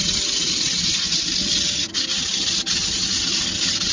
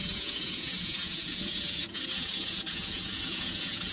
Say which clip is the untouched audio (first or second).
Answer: first